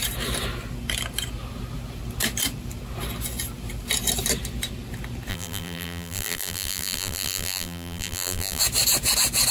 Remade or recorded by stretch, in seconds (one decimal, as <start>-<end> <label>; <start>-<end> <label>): 0.0-5.3 recorded; 5.3-8.6 remade; 8.6-9.5 recorded